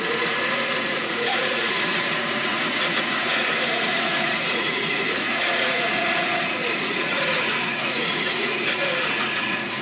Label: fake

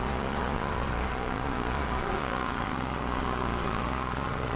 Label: fake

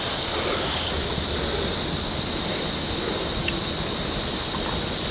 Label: real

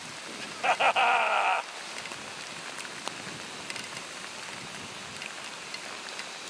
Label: real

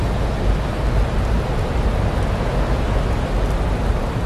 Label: real